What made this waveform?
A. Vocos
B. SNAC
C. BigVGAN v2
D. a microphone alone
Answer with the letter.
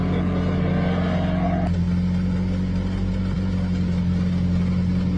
D